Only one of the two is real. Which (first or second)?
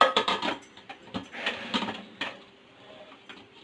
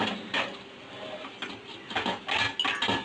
second